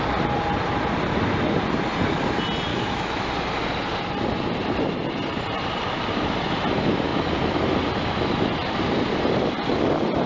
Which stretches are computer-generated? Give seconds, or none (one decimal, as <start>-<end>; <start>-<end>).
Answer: 2.7-3.3